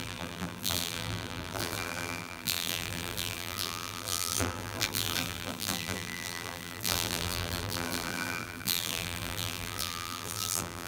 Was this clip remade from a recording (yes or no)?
yes